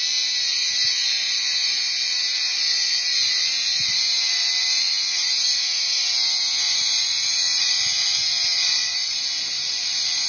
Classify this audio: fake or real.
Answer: fake